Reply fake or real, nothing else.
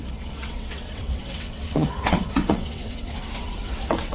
fake